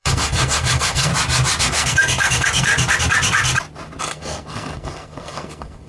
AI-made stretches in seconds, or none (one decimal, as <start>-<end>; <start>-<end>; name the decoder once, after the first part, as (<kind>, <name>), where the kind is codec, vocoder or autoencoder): 0.0-1.1 (codec, SNAC); 1.6-2.7; 4.0-5.9